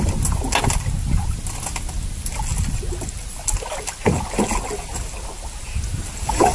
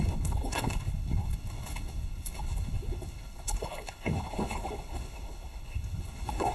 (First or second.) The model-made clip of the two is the second